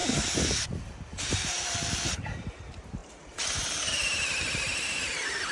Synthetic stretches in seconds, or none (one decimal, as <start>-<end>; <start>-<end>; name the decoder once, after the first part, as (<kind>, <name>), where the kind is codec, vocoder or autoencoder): 0.7-5.5 (vocoder, BigVGAN v2)